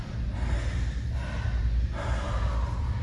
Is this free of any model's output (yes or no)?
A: yes